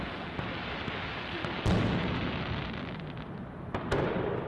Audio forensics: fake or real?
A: real